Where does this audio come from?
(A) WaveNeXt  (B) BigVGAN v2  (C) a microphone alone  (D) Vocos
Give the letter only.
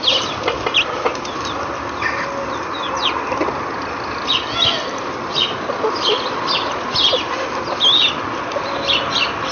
C